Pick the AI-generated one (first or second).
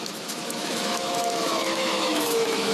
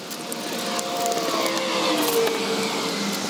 first